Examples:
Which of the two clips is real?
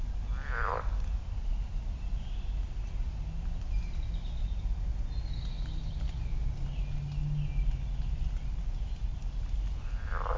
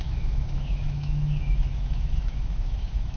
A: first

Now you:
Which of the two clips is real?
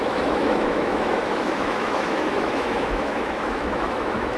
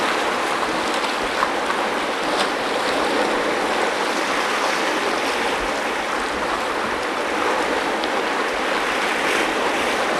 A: second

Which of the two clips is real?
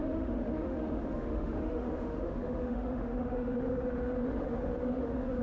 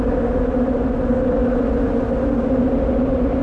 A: second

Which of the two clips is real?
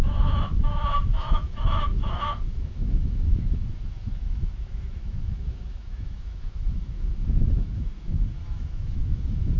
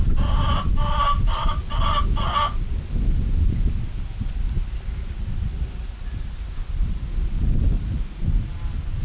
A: second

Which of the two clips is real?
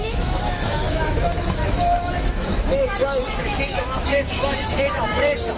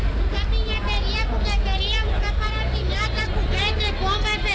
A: second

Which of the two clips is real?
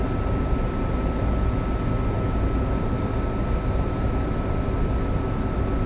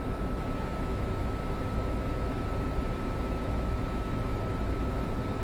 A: first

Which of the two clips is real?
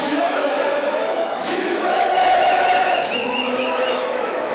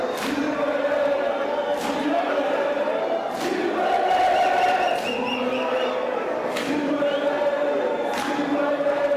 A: second